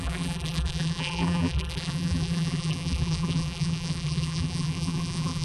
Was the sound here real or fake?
fake